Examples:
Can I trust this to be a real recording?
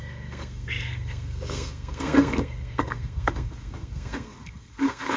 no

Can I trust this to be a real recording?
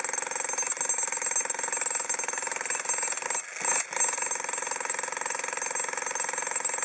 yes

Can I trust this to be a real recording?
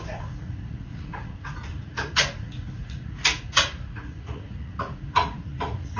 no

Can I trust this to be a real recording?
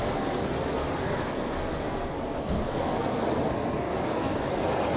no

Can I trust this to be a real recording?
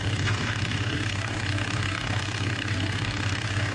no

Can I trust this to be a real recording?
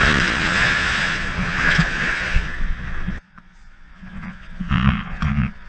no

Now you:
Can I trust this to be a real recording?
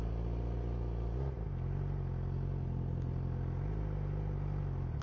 yes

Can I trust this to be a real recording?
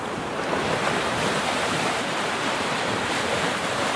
no